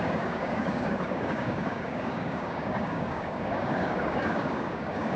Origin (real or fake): fake